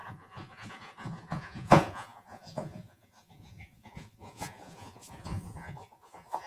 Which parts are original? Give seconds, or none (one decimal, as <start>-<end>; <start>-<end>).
none